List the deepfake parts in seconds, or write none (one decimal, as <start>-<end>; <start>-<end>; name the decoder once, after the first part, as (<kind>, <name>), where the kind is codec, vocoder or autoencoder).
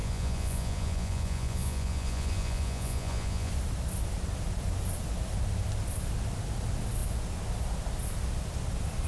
0.0-3.5 (vocoder, Vocos)